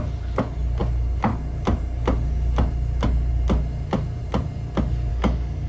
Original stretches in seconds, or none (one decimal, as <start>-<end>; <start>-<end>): 0.0-5.1